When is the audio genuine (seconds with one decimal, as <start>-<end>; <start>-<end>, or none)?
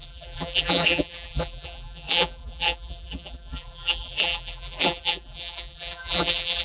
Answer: none